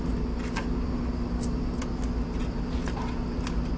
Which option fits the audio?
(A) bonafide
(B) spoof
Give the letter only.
A